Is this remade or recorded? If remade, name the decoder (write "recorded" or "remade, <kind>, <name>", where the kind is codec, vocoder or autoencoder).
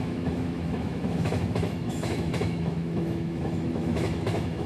remade, autoencoder, DAC-VAE